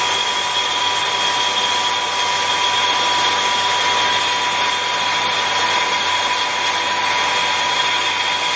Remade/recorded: recorded